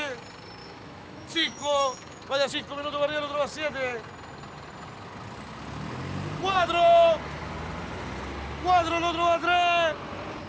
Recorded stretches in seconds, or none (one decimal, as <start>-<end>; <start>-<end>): 0.0-0.6; 2.5-10.5